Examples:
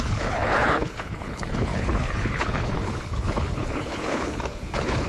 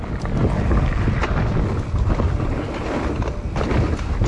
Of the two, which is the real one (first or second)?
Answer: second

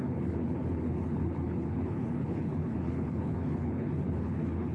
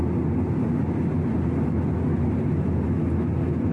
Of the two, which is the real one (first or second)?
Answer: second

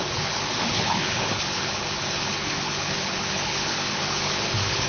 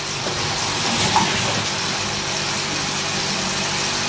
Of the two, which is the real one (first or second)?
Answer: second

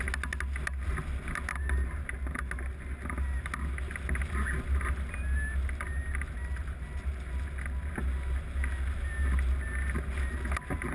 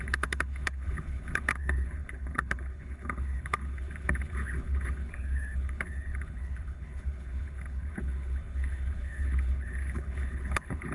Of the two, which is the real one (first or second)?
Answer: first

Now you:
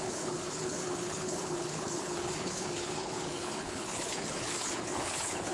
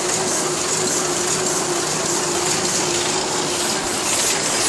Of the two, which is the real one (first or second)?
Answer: second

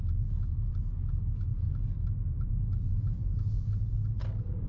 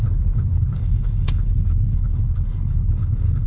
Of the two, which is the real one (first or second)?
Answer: first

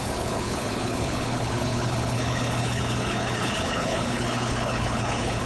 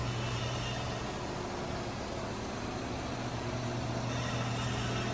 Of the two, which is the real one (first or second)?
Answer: second